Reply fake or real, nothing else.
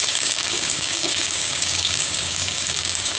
fake